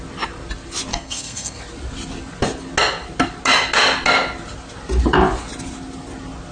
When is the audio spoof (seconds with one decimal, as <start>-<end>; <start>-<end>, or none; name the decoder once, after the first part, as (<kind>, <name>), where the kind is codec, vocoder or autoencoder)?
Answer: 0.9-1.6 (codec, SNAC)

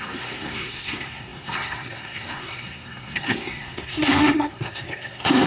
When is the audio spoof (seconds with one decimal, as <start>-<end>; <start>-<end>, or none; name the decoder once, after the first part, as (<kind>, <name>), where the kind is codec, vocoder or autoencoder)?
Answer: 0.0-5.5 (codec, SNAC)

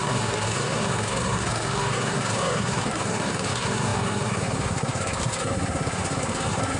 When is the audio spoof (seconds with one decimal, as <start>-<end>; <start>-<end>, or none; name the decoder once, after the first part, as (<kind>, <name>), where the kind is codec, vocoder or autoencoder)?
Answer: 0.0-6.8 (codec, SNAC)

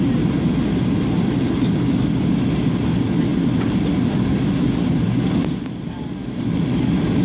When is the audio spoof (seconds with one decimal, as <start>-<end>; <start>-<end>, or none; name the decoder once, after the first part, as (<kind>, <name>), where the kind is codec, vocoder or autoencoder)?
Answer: none

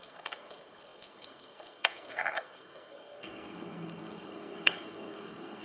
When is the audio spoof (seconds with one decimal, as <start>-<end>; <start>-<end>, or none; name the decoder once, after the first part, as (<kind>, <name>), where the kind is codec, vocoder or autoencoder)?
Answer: 0.0-5.6 (codec, SNAC)